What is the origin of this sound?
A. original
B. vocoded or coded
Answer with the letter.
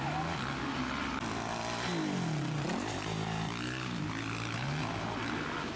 A